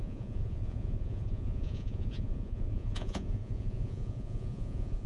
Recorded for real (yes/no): no